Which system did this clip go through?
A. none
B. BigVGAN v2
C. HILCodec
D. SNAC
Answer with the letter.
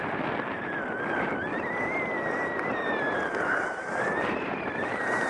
A